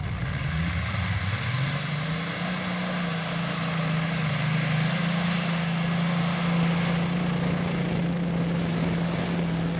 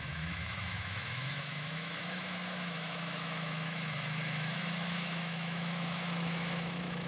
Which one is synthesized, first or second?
second